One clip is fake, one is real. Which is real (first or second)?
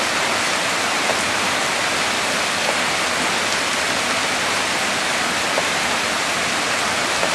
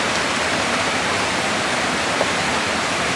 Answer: first